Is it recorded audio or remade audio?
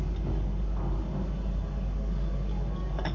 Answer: remade